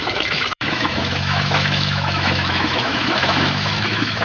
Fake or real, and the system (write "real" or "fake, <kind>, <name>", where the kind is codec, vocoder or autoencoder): fake, autoencoder, DAC-VAE